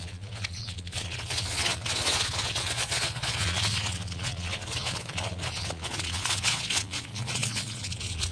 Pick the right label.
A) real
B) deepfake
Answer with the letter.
B